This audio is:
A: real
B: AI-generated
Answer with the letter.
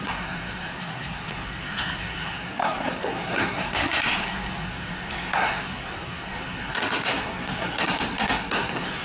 B